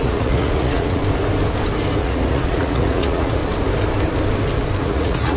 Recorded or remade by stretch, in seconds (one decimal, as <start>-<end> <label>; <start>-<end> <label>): 0.0-1.0 remade; 1.0-2.0 recorded; 2.0-3.4 remade; 3.4-4.8 recorded; 4.8-5.4 remade